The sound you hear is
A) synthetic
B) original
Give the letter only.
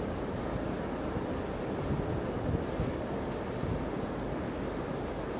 B